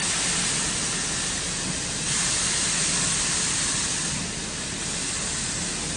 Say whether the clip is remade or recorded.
recorded